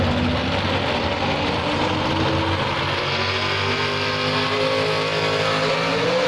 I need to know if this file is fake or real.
real